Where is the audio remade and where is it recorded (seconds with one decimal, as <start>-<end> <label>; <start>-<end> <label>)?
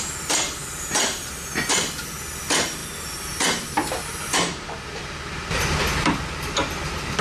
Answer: 0.0-7.2 recorded